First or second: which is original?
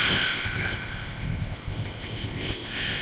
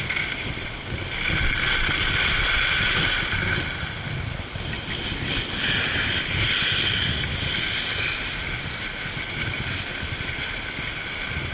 second